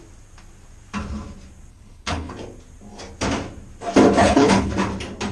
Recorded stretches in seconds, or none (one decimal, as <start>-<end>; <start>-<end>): 0.0-1.7; 2.3-4.2; 4.7-5.3